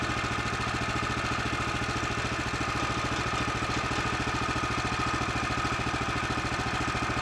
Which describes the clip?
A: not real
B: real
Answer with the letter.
B